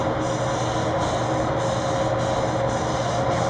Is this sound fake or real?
real